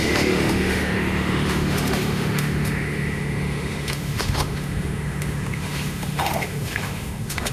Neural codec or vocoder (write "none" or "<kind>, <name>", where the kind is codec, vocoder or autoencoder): autoencoder, DAC-VAE